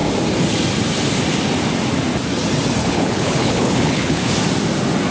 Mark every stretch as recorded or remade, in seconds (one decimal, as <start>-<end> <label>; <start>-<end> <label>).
0.0-2.8 recorded; 2.8-4.3 remade; 4.3-5.1 recorded